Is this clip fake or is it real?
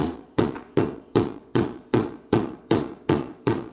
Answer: fake